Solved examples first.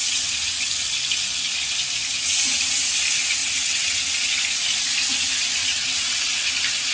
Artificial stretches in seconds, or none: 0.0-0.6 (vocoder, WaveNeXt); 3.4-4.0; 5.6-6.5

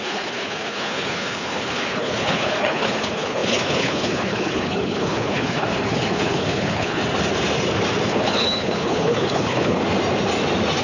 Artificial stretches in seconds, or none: 0.0-7.0 (codec, HILCodec); 8.1-9.8

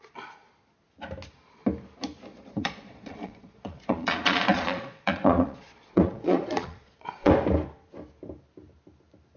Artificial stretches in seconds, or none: 2.3-7.3 (vocoder, Vocos)

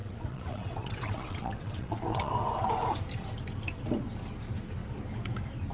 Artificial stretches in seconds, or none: 0.0-2.3 (vocoder, WaveNeXt)

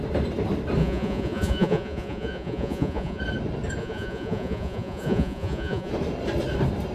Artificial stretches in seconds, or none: 0.8-3.2 (vocoder, Vocos); 3.8-5.9

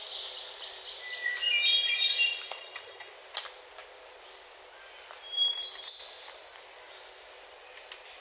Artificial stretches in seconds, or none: 2.6-3.1 (vocoder, HiFi-GAN)

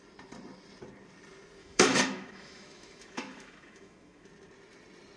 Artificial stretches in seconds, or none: 1.6-4.3 (autoencoder, DAC-VAE)

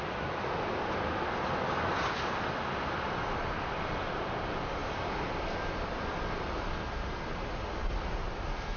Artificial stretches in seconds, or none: none